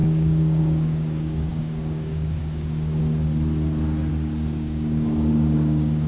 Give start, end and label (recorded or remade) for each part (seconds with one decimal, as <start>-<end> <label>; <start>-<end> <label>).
0.0-3.0 remade; 3.0-4.1 recorded; 4.1-6.1 remade